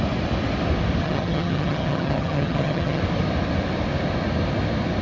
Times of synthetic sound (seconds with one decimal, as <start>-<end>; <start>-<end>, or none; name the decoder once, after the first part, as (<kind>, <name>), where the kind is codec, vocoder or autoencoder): 1.0-3.0 (vocoder, HiFi-GAN)